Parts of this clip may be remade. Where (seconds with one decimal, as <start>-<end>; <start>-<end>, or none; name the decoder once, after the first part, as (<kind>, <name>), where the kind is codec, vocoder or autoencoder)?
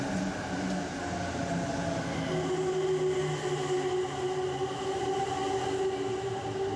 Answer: 0.0-0.8 (vocoder, BigVGAN v2); 4.0-5.4; 6.1-6.8